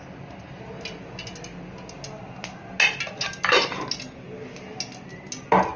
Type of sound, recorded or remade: recorded